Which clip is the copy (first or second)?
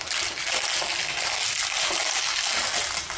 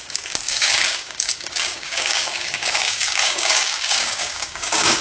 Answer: second